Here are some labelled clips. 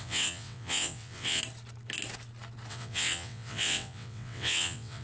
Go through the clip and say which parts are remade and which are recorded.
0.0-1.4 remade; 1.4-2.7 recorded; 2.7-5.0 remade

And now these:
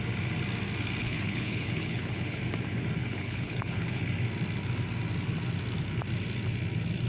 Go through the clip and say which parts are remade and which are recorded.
0.0-1.0 recorded; 1.0-2.4 remade; 2.4-3.0 recorded; 3.0-4.0 remade; 4.0-7.1 recorded